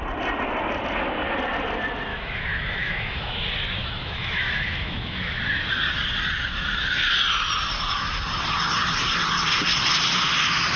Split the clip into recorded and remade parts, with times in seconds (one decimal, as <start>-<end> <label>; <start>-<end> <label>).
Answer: 0.0-2.1 recorded; 2.1-3.4 remade; 3.4-3.8 recorded; 3.8-5.4 remade; 5.4-10.8 recorded

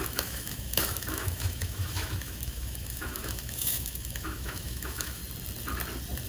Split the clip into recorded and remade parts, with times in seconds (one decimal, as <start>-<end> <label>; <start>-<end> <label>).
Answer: 0.0-5.2 remade; 5.2-6.3 recorded

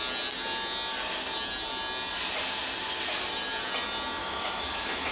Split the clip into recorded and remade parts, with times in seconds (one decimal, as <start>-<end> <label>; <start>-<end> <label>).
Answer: 0.0-4.2 recorded; 4.2-5.1 remade

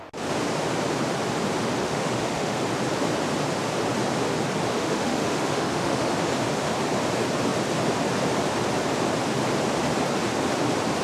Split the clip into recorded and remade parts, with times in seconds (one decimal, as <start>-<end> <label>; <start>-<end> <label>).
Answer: 0.0-1.8 recorded; 1.8-2.6 remade; 2.6-4.7 recorded; 4.7-6.1 remade; 6.1-11.0 recorded